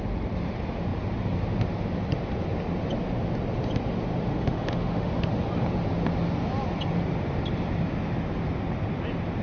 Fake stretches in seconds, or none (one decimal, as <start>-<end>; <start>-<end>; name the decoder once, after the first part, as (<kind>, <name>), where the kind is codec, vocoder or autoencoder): 4.4-5.3 (autoencoder, DAC-VAE)